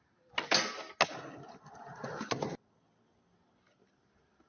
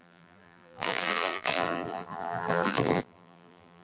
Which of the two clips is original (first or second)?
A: first